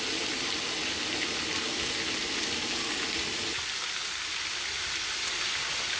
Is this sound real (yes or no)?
yes